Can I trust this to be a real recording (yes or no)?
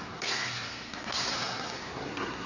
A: no